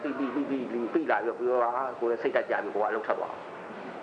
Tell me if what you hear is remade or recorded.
recorded